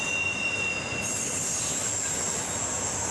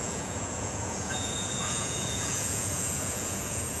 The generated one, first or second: second